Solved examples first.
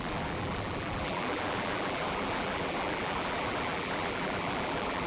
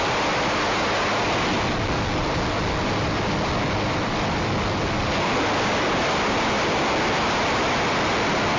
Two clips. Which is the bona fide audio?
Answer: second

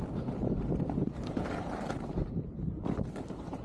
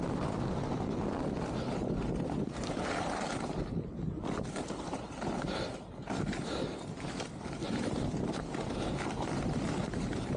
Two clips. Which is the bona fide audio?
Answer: second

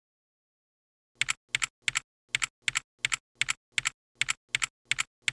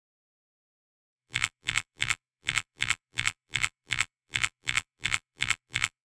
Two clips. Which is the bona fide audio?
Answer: first